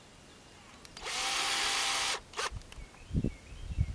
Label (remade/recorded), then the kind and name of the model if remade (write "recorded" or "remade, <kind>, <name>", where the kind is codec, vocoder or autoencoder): recorded